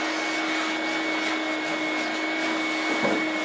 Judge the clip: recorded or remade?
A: recorded